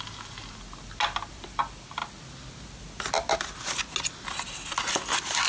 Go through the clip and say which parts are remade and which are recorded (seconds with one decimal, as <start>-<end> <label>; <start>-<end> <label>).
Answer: 0.0-0.4 remade; 0.4-1.3 recorded; 1.3-2.0 remade; 2.0-5.5 recorded